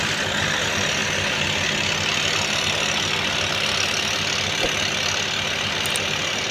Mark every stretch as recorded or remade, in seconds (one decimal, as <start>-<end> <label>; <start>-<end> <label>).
0.0-6.5 recorded